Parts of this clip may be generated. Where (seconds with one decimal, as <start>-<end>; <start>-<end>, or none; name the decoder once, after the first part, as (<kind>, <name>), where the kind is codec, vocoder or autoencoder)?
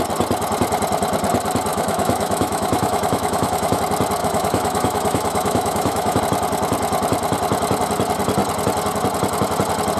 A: 1.7-3.8 (autoencoder, DAC-VAE); 4.2-6.2